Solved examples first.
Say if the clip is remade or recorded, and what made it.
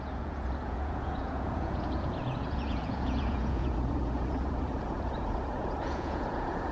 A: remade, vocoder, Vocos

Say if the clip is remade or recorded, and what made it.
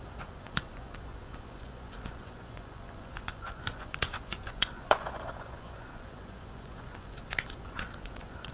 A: remade, vocoder, Vocos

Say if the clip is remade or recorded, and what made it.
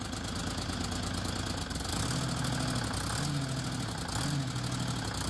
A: recorded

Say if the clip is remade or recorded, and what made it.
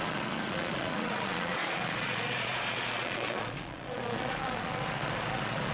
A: remade, vocoder, Vocos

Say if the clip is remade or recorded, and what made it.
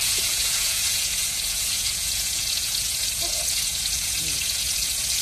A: remade, vocoder, Vocos